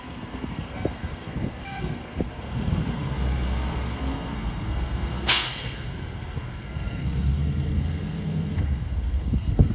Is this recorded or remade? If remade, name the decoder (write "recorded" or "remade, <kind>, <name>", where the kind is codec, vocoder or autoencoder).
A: remade, codec, SNAC